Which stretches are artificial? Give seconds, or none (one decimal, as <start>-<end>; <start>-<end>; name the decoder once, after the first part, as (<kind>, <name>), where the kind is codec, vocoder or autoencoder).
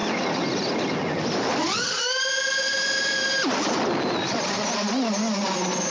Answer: none